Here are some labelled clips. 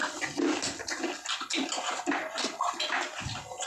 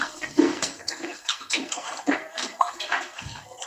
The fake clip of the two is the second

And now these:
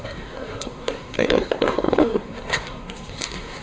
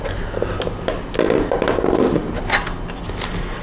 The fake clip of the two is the first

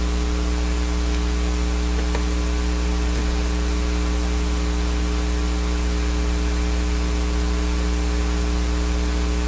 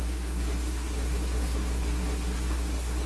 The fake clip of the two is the second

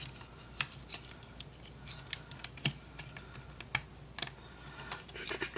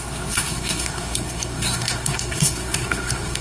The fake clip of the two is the second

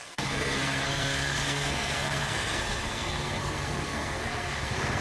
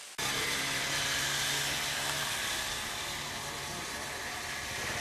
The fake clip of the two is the first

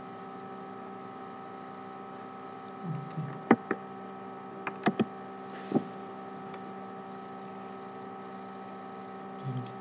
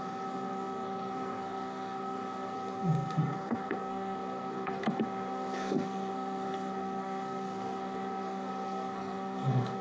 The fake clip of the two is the second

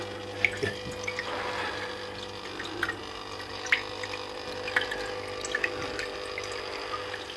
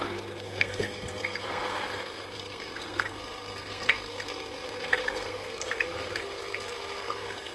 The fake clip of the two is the second